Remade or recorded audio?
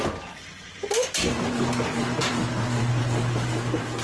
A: recorded